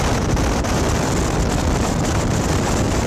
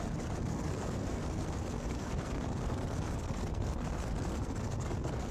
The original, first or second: first